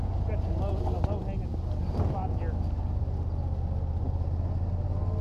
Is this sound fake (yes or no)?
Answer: no